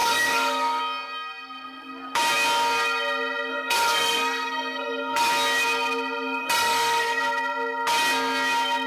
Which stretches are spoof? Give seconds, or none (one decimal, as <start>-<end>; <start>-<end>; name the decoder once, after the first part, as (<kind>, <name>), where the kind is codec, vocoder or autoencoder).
0.0-0.8 (codec, SNAC); 3.5-5.3; 6.4-7.2